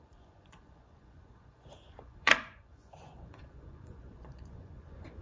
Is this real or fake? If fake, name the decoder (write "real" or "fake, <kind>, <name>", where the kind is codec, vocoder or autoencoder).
fake, vocoder, Vocos